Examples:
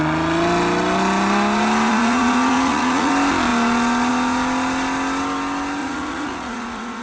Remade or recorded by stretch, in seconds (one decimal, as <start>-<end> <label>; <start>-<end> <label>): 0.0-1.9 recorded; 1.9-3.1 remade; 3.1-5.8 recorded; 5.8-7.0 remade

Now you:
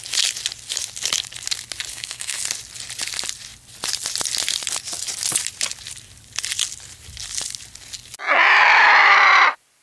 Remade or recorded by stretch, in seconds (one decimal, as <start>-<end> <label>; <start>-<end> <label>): 0.0-1.9 recorded; 1.9-2.4 remade; 2.4-9.8 recorded

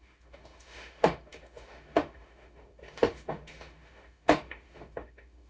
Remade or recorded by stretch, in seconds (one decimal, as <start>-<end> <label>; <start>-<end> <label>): 0.0-5.5 remade

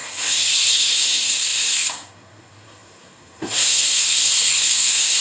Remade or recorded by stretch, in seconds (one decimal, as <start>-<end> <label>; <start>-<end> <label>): 0.0-5.2 remade

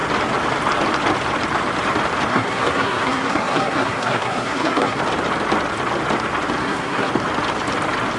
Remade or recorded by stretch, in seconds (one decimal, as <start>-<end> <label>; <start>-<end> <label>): 0.0-2.3 recorded; 2.3-5.0 remade; 5.0-6.6 recorded; 6.6-7.1 remade; 7.1-8.2 recorded